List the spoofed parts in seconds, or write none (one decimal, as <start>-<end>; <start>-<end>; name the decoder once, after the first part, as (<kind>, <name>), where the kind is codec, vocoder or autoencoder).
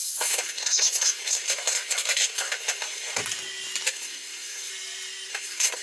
0.0-3.2 (codec, SNAC); 3.9-4.7; 5.3-5.8